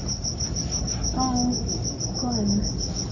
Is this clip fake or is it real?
real